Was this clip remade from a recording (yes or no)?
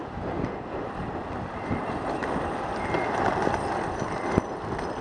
no